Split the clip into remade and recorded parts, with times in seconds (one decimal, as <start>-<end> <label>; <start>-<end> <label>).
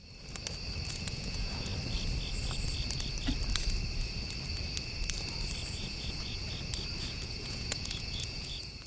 0.0-0.9 recorded; 0.9-1.7 remade; 1.7-5.7 recorded; 5.7-6.4 remade; 6.4-7.0 recorded; 7.0-8.9 remade